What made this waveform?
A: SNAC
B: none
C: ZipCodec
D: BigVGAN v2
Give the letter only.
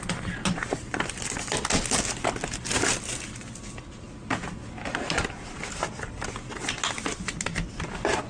B